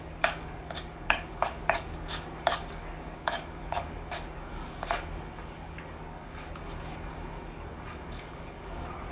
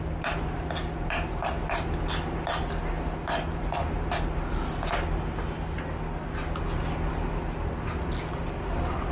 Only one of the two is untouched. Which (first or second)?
second